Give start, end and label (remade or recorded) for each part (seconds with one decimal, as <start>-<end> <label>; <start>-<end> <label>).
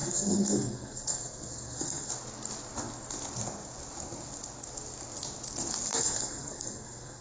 0.0-2.1 remade; 2.1-5.9 recorded; 5.9-7.2 remade